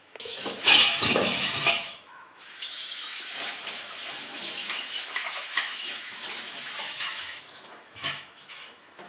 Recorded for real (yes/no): no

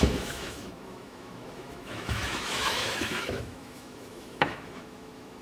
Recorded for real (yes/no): no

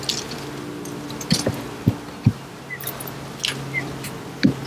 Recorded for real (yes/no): yes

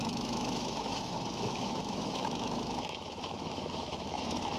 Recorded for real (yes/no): no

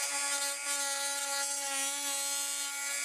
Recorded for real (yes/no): yes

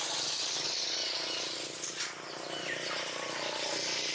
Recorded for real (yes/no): yes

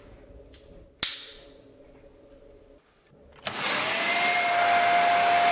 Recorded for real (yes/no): yes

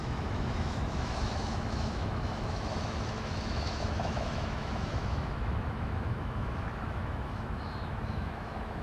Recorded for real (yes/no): no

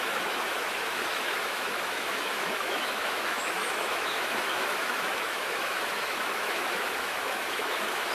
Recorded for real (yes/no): no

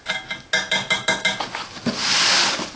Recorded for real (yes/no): yes